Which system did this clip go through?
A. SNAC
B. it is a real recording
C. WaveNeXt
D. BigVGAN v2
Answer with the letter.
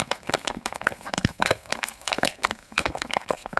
A